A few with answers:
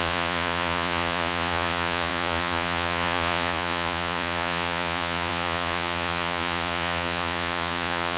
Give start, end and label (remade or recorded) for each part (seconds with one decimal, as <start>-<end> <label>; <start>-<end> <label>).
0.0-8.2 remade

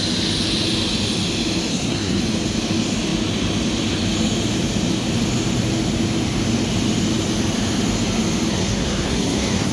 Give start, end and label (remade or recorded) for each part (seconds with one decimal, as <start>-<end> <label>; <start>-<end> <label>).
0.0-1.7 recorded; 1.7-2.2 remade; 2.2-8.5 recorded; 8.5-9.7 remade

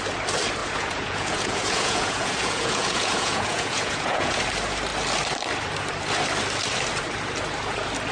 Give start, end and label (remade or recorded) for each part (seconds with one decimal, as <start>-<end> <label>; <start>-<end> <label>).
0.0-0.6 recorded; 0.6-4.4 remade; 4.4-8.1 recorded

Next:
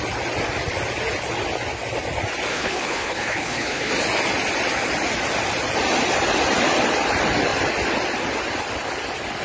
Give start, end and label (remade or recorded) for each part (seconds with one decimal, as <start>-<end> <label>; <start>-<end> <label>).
0.0-2.5 recorded; 2.5-3.9 remade; 3.9-9.4 recorded

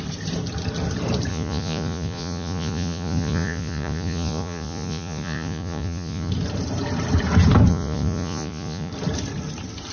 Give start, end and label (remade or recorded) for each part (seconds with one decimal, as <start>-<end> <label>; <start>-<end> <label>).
0.0-1.3 recorded; 1.3-6.3 remade; 6.3-7.7 recorded; 7.7-8.9 remade; 8.9-9.9 recorded

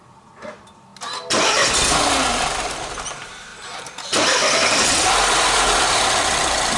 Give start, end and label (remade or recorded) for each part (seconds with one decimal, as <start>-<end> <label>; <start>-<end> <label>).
0.0-0.9 remade; 0.9-1.9 recorded; 1.9-6.8 remade

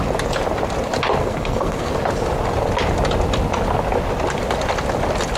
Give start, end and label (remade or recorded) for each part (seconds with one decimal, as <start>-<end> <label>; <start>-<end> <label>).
0.0-1.2 recorded; 1.2-1.9 remade; 1.9-5.4 recorded